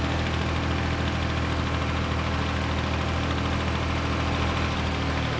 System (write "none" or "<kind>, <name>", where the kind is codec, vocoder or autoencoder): none